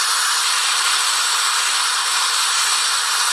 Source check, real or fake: real